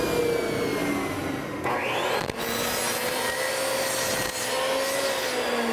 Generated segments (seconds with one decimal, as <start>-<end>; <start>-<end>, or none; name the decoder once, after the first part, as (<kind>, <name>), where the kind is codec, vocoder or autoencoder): none